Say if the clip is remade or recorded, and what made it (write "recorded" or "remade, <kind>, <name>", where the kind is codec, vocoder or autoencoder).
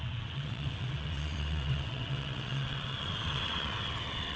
remade, vocoder, WaveNeXt